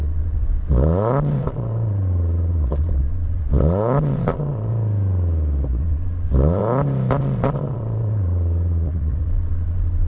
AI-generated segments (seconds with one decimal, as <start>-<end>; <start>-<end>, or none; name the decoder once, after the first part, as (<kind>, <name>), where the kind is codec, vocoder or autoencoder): 0.0-4.7 (vocoder, Vocos); 5.7-6.6; 7.2-10.1